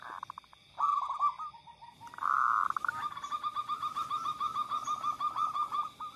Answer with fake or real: real